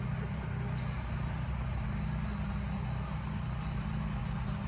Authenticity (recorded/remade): recorded